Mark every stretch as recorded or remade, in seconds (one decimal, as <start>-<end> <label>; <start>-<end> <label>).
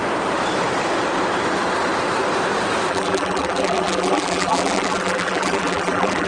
0.0-2.9 recorded; 2.9-6.3 remade